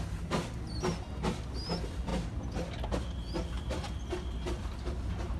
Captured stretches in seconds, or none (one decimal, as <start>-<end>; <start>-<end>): 0.0-5.4